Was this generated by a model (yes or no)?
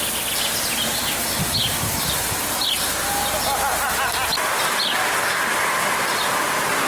no